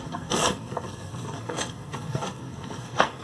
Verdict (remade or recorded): remade